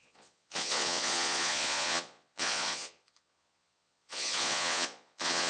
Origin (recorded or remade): remade